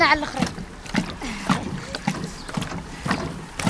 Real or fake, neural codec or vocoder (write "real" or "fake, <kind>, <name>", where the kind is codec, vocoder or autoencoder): real